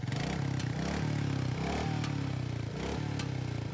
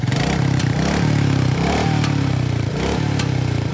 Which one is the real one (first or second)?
first